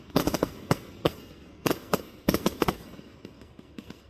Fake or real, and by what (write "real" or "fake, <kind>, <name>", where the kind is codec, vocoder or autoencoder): fake, codec, SNAC